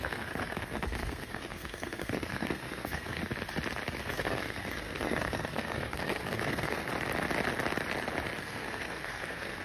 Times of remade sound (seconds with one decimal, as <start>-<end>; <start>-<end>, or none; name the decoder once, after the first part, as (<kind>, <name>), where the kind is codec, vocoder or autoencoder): 0.0-3.2 (codec, SNAC); 4.0-6.9; 8.4-9.6